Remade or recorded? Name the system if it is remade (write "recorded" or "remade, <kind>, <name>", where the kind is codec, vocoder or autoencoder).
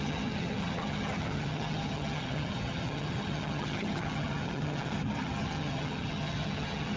remade, vocoder, HiFi-GAN